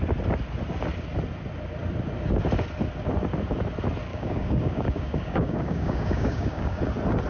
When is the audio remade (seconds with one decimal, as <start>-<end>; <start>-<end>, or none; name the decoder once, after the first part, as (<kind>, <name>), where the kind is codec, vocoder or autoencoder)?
4.1-6.8 (codec, DAC)